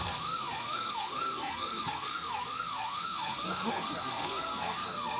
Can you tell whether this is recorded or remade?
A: remade